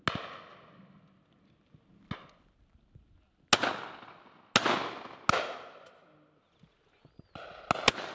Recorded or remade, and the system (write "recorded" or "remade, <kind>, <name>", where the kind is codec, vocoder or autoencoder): recorded